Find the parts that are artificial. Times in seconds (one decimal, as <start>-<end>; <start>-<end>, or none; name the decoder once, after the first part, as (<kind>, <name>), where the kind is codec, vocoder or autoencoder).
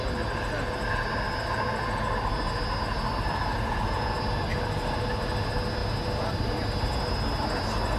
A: 3.5-4.2 (vocoder, Vocos)